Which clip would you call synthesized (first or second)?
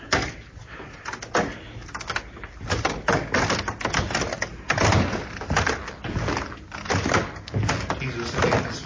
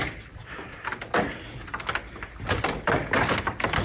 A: second